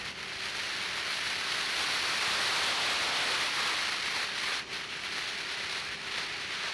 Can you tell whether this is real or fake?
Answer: real